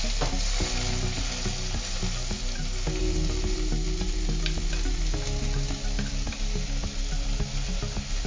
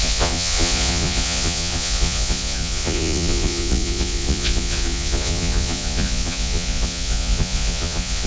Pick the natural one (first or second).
first